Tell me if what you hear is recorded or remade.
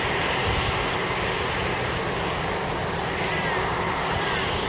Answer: recorded